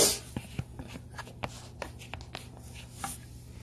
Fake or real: real